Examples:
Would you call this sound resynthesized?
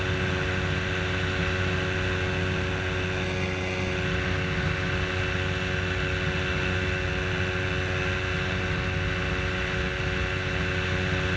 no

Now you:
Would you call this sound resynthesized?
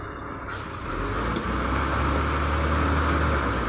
no